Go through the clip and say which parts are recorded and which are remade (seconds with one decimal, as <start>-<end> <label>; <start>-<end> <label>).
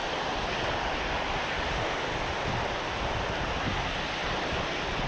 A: 0.0-4.2 recorded; 4.2-5.1 remade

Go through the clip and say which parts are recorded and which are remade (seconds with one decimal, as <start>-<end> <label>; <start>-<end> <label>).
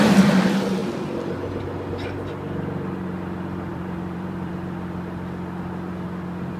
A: 0.0-3.7 recorded; 3.7-4.5 remade; 4.5-6.6 recorded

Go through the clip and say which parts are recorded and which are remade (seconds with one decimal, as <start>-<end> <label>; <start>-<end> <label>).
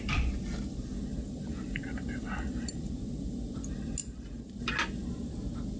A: 0.0-1.1 recorded; 1.1-2.9 remade; 2.9-4.0 recorded; 4.0-4.6 remade; 4.6-5.8 recorded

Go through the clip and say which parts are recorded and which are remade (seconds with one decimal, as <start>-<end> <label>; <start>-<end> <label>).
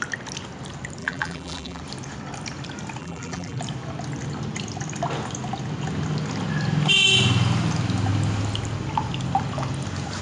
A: 0.0-1.0 recorded; 1.0-1.8 remade; 1.8-3.0 recorded; 3.0-3.6 remade; 3.6-10.2 recorded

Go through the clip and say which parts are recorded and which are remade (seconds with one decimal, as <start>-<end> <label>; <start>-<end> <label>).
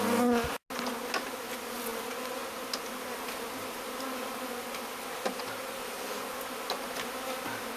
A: 0.0-7.8 recorded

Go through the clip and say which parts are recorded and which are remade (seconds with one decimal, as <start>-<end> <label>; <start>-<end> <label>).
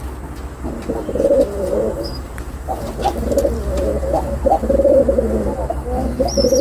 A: 0.0-1.0 recorded; 1.0-5.0 remade; 5.0-6.6 recorded